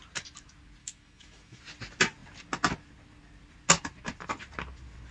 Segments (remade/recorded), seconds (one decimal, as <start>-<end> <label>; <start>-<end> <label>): 0.0-0.8 recorded; 0.8-1.6 remade; 1.6-5.1 recorded